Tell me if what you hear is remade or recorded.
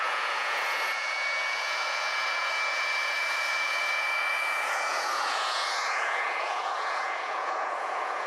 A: remade